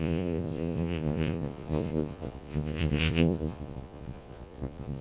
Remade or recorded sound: remade